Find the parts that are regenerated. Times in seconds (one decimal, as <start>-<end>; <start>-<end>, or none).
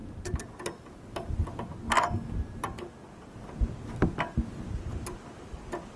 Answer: none